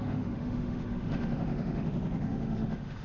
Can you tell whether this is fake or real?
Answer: fake